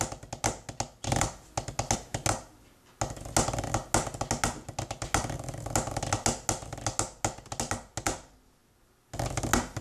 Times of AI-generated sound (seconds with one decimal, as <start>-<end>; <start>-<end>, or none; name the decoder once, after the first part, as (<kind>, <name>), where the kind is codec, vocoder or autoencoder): none